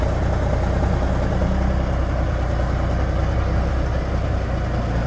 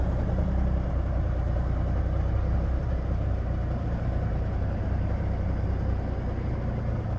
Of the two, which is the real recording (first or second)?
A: first